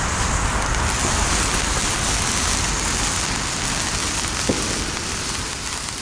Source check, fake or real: real